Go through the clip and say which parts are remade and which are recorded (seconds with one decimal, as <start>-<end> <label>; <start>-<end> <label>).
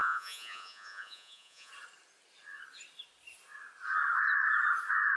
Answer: 0.0-1.7 remade; 1.7-5.2 recorded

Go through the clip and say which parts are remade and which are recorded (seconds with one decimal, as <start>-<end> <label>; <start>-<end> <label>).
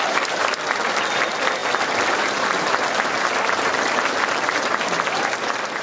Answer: 0.0-5.8 recorded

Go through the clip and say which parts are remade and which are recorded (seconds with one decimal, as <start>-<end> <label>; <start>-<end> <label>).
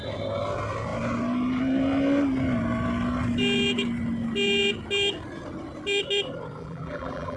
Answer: 0.0-6.6 recorded; 6.6-7.4 remade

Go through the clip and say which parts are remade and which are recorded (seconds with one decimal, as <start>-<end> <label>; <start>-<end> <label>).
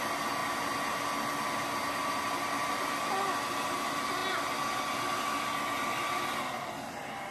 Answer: 0.0-7.3 recorded